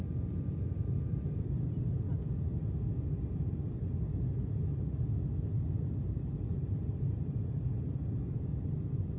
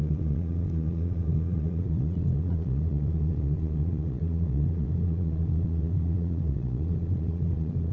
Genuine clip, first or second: first